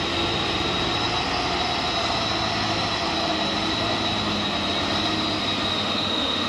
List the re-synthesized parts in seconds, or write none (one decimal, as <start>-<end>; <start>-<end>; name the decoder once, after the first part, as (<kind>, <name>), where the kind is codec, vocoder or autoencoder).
5.7-6.5 (autoencoder, DAC-VAE)